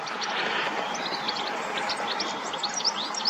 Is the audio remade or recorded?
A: recorded